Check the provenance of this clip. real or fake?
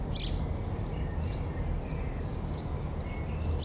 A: real